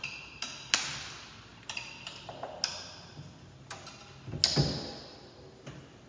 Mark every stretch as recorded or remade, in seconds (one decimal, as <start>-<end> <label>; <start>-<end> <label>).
0.0-6.1 recorded